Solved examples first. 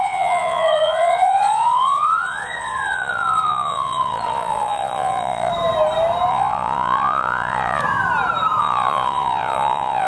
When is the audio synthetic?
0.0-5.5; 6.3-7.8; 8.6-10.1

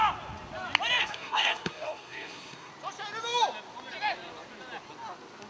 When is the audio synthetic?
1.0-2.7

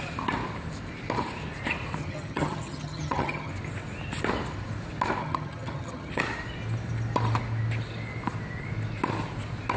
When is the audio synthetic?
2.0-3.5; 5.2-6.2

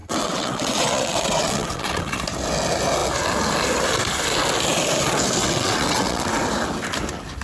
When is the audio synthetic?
0.0-2.2; 5.4-6.3

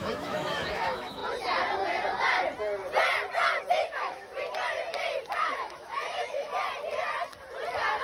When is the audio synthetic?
0.0-1.2; 3.7-4.3; 5.4-6.5

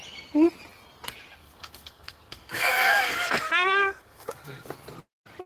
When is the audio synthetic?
1.4-4.7